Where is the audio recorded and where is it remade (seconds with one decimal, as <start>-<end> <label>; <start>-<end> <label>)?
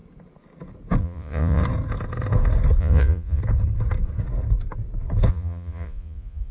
0.0-1.0 recorded; 1.0-1.6 remade; 1.6-2.8 recorded; 2.8-3.4 remade; 3.4-5.3 recorded; 5.3-6.5 remade